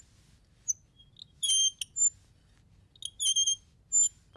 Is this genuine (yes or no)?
yes